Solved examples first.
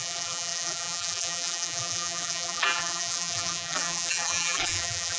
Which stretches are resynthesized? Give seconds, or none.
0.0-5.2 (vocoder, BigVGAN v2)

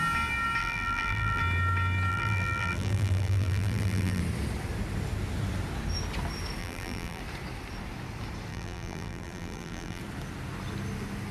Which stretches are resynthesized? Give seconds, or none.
0.6-1.4 (vocoder, BigVGAN v2); 2.1-4.2; 6.6-7.2; 8.5-10.0

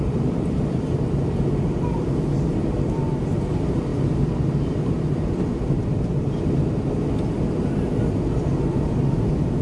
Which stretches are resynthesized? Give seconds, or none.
none

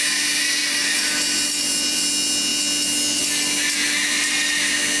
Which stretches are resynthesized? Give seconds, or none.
0.6-2.1 (vocoder, BigVGAN v2)

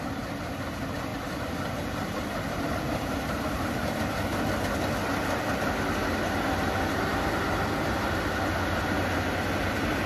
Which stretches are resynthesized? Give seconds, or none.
1.1-3.7 (vocoder, BigVGAN v2)

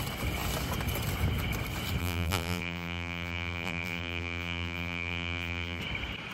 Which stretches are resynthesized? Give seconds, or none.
2.0-5.8 (vocoder, BigVGAN v2)